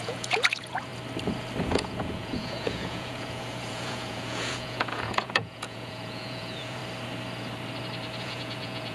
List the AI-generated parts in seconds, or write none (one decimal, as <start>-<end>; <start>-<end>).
0.0-0.9; 1.6-6.8; 8.2-8.9